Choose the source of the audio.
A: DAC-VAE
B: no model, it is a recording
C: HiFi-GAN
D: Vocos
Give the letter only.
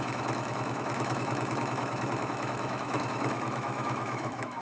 A